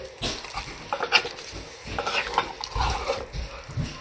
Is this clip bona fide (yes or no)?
yes